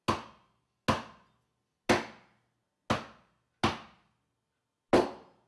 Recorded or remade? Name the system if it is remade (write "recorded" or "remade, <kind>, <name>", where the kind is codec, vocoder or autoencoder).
recorded